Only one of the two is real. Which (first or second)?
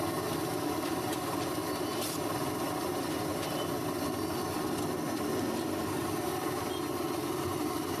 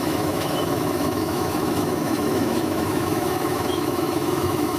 first